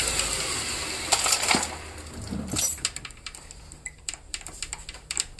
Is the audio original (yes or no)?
yes